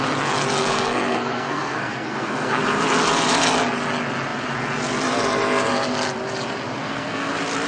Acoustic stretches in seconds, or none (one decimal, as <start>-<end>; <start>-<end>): 0.0-0.6; 2.6-6.8; 7.3-7.7